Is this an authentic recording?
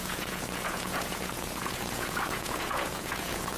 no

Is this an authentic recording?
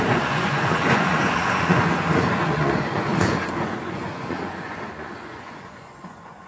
no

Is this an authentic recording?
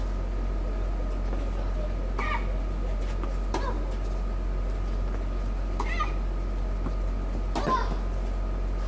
yes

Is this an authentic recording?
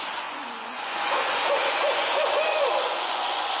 no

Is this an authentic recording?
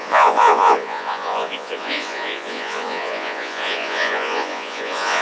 no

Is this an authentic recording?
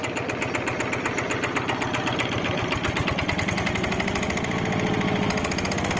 yes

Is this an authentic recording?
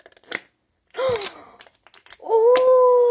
yes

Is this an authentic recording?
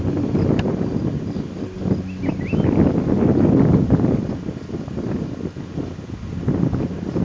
yes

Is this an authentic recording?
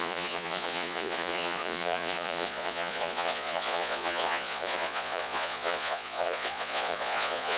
no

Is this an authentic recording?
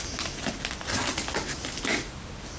yes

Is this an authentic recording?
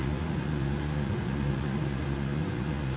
no